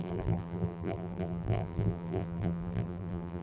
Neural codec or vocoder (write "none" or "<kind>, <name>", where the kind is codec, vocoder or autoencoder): vocoder, BigVGAN v2